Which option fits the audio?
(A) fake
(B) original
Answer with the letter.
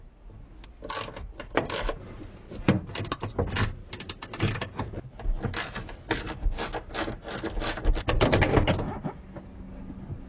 B